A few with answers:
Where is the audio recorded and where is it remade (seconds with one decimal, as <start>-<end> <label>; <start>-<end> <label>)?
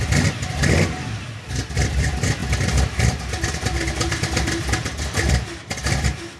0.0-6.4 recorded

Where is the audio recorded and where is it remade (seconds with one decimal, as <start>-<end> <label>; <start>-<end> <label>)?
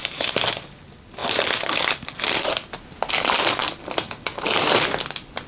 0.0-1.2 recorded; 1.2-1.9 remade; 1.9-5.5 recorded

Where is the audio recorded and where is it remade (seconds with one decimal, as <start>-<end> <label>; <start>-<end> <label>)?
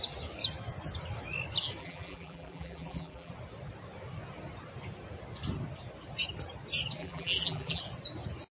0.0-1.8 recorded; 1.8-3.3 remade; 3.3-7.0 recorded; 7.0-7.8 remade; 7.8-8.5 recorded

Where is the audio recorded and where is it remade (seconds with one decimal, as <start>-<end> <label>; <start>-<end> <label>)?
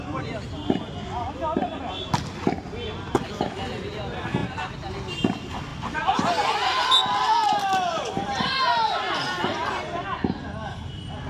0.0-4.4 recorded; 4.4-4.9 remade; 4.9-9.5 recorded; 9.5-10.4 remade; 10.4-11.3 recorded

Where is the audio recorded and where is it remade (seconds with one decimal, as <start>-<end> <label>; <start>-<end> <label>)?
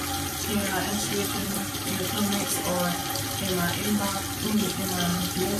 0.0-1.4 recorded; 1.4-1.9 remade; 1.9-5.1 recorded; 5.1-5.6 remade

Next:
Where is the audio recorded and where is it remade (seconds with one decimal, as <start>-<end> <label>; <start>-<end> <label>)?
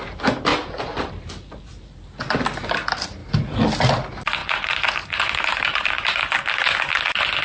0.0-0.5 recorded; 0.5-1.1 remade; 1.1-4.4 recorded; 4.4-6.2 remade; 6.2-7.4 recorded